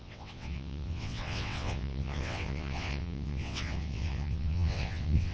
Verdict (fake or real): fake